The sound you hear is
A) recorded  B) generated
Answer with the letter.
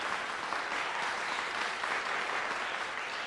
A